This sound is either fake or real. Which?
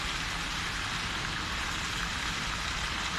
real